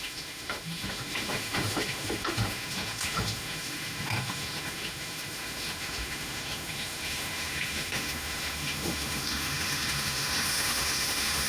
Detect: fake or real fake